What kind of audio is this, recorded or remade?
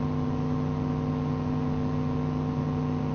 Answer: recorded